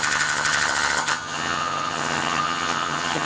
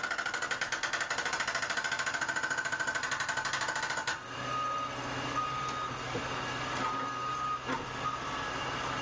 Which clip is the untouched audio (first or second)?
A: second